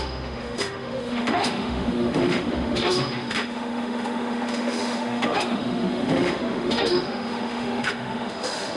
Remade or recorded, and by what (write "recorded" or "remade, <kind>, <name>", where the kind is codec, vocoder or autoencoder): remade, autoencoder, DAC-VAE